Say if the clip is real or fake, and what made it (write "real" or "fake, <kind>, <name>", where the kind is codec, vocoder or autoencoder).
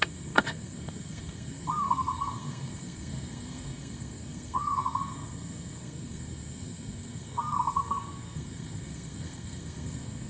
fake, codec, SNAC